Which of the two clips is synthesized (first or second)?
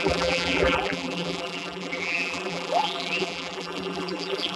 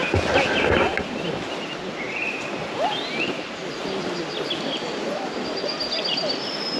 first